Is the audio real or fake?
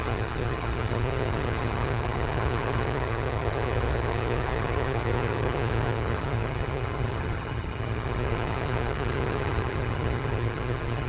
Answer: fake